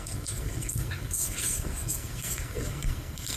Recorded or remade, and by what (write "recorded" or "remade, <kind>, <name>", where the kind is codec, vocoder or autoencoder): remade, codec, SNAC